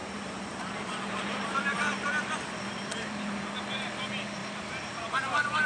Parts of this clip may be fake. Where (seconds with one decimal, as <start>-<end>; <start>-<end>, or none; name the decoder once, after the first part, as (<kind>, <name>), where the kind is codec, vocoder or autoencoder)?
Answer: 0.0-3.4 (vocoder, BigVGAN v2)